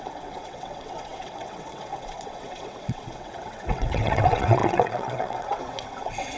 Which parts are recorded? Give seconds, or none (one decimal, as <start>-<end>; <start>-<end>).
none